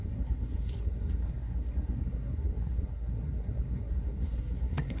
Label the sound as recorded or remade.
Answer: remade